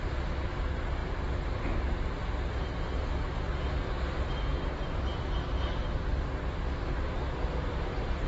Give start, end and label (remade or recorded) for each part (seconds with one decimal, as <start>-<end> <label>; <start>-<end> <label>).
0.0-8.3 recorded